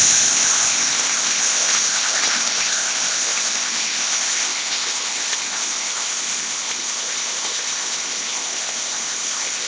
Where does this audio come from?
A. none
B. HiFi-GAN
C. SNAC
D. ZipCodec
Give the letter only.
D